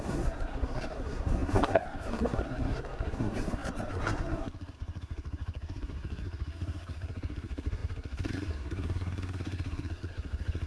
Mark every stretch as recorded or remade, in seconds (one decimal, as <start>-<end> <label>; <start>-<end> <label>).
0.0-10.7 remade